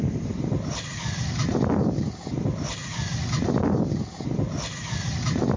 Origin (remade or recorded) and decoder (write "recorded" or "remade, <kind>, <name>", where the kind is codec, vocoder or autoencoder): recorded